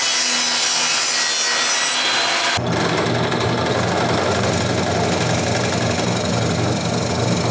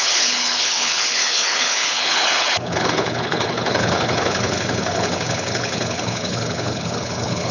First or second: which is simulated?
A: second